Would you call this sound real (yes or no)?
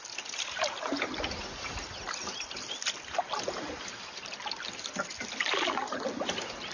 yes